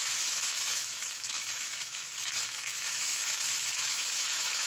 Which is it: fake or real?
fake